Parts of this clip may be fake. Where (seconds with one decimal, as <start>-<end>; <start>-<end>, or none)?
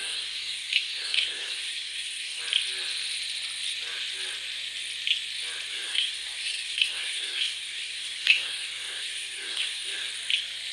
0.0-2.4; 5.7-10.1